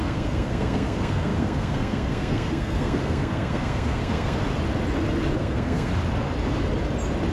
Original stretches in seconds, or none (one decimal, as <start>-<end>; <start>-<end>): 4.4-5.4; 5.9-7.3